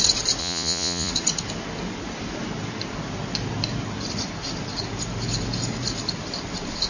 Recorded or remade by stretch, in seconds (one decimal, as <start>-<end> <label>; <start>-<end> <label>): 0.0-0.4 recorded; 0.4-1.1 remade; 1.1-6.9 recorded

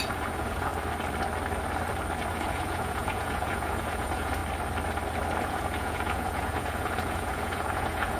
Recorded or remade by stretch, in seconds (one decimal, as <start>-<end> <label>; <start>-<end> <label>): 0.0-0.7 remade; 0.7-2.3 recorded; 2.3-4.4 remade; 4.4-5.4 recorded; 5.4-8.2 remade

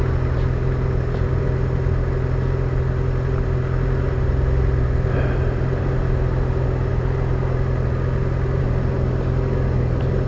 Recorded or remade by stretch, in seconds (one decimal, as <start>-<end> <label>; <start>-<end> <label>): 0.0-10.3 recorded

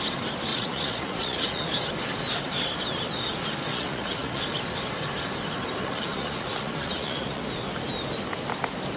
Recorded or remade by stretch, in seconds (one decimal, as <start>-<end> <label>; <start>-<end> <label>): 0.0-0.5 recorded; 0.5-1.7 remade; 1.7-3.7 recorded; 3.7-4.4 remade; 4.4-5.8 recorded; 5.8-7.4 remade; 7.4-9.0 recorded

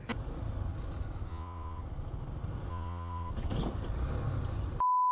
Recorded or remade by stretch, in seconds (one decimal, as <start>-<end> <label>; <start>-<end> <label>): 0.0-1.3 recorded; 1.3-1.8 remade; 1.8-2.7 recorded; 2.7-3.3 remade; 3.3-5.1 recorded